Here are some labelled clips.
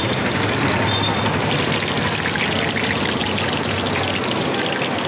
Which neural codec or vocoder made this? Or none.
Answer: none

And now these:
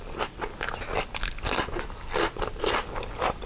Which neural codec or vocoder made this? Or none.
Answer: none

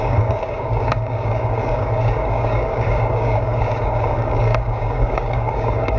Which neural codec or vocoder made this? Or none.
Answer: codec, DAC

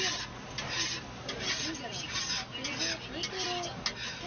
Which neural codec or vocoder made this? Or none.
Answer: none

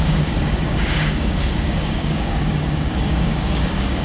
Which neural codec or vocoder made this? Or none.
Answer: codec, DAC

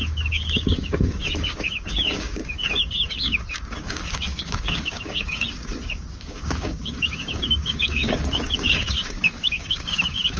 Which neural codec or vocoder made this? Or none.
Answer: codec, DAC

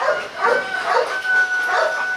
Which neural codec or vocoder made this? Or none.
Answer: none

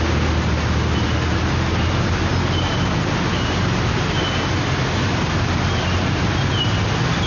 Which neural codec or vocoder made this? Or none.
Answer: none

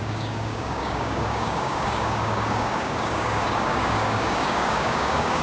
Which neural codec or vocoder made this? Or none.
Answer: codec, DAC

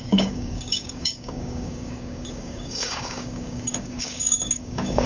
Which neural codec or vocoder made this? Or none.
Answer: codec, DAC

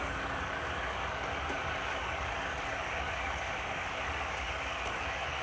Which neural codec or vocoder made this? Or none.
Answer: codec, DAC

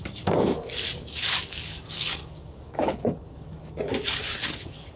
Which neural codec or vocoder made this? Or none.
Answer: codec, DAC